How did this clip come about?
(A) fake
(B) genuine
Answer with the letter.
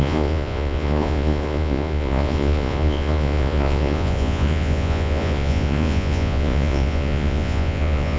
A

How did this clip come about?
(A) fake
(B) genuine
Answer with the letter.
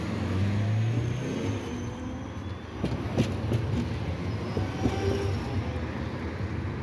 B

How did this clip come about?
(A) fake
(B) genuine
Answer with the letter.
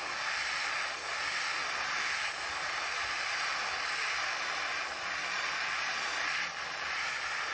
B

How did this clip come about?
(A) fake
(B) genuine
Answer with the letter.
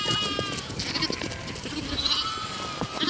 B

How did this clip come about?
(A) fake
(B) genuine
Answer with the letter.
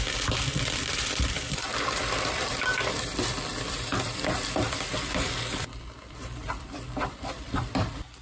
A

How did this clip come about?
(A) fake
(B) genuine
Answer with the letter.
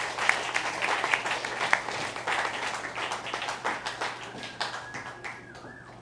B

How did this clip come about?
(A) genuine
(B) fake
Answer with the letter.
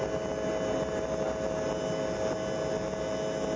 A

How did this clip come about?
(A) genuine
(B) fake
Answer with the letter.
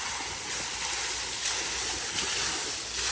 A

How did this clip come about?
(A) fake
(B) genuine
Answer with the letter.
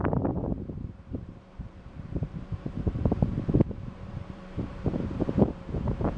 A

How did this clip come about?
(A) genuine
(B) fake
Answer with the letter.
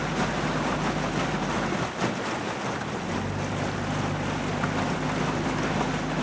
A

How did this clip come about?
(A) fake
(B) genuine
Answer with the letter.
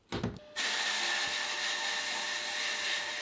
B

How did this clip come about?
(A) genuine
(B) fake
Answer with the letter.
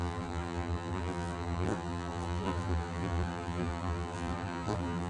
B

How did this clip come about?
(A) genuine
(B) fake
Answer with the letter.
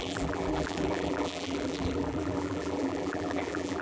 B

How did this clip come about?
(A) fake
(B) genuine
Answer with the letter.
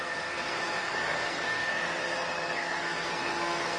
A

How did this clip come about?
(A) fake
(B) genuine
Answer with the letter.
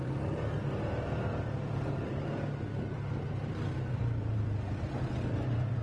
A